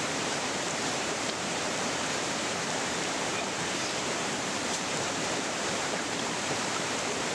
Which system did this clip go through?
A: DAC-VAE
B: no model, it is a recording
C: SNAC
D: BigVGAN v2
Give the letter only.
D